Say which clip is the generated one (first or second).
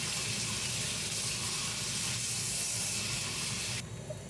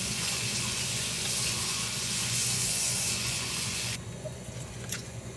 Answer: second